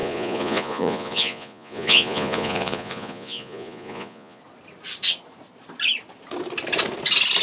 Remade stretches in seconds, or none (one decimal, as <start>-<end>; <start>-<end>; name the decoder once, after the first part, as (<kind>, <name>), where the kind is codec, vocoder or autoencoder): 0.0-4.4 (vocoder, Vocos)